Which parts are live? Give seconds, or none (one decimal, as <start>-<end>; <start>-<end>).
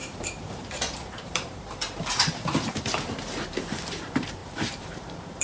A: none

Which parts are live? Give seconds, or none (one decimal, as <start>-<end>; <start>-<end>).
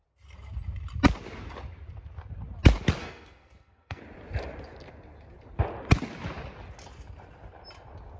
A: 0.0-3.0; 4.0-8.2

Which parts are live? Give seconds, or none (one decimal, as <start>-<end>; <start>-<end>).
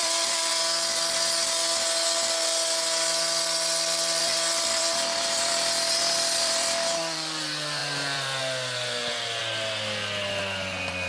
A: 0.5-4.2; 5.5-6.0; 9.4-11.1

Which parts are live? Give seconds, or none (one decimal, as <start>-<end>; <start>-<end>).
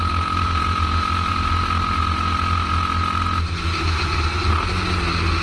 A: 0.0-5.4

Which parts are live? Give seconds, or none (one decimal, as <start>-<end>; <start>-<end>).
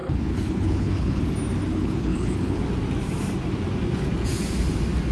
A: 1.2-1.7; 2.6-5.1